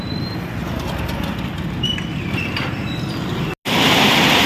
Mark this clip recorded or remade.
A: recorded